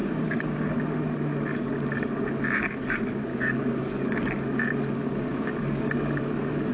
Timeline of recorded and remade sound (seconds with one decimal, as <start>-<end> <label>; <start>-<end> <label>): 0.0-0.7 remade; 0.7-3.3 recorded; 3.3-4.2 remade; 4.2-5.3 recorded; 5.3-6.2 remade; 6.2-6.7 recorded